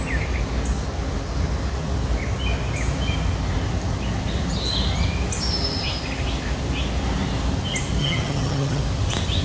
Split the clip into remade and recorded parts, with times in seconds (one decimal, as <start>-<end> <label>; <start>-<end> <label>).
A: 0.0-8.0 recorded; 8.0-8.8 remade; 8.8-9.4 recorded